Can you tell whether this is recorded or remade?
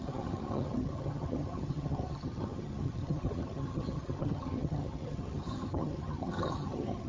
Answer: remade